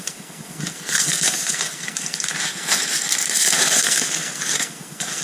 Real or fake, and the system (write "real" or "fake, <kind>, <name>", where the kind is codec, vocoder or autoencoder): fake, codec, SNAC